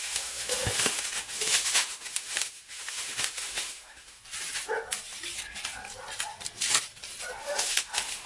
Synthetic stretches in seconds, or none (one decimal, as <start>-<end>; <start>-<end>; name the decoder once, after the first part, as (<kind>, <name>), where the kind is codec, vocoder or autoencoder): 0.0-4.2 (autoencoder, DAC-VAE); 7.4-8.3